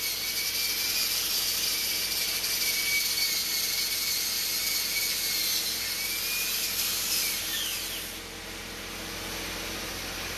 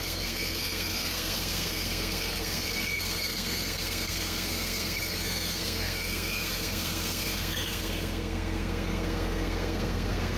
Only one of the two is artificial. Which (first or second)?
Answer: second